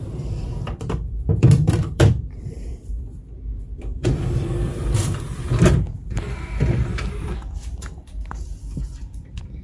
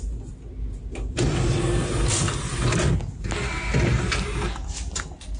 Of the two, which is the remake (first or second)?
first